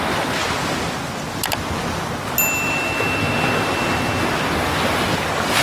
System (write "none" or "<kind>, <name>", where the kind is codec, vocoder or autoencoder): none